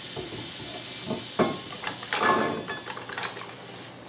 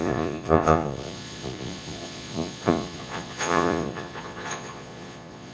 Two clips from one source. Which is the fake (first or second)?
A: second